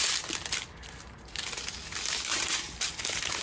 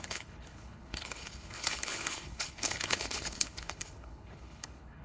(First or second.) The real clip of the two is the first